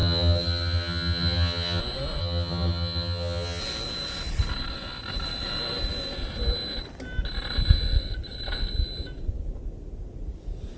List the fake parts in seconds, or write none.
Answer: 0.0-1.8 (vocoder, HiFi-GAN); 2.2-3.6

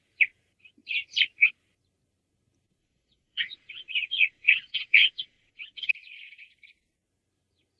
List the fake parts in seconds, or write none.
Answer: 2.8-5.9 (vocoder, Vocos)

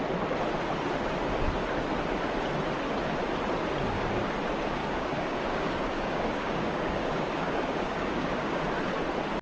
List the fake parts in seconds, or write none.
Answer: 4.8-8.6 (codec, DAC)

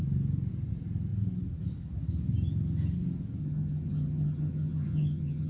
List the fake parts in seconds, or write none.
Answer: 3.4-5.5 (vocoder, HiFi-GAN)

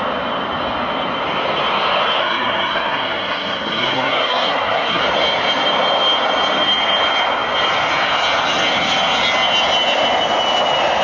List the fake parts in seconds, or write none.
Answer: 2.2-5.0 (codec, SNAC)

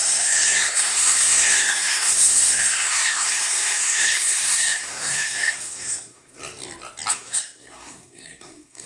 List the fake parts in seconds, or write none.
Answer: 0.0-6.4 (codec, SNAC); 7.1-8.9

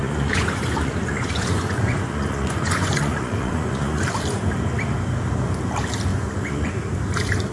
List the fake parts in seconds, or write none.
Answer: 0.0-4.0 (vocoder, Vocos); 6.1-6.8